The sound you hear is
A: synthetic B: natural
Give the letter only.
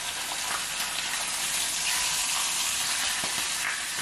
B